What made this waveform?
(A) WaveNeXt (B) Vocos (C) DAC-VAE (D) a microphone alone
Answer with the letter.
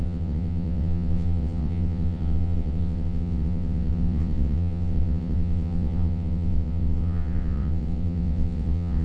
A